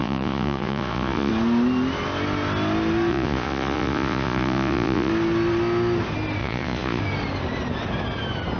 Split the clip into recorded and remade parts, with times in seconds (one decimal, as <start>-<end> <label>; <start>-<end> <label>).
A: 0.0-1.3 remade; 1.3-3.1 recorded; 3.1-5.1 remade; 5.1-6.4 recorded; 6.4-7.0 remade; 7.0-8.6 recorded